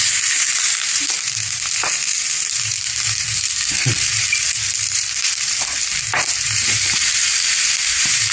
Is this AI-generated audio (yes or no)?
yes